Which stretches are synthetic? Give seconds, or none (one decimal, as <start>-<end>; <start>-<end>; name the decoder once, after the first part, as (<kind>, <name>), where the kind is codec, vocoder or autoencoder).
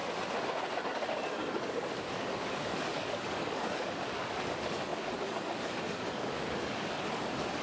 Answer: 0.9-7.6 (codec, DAC)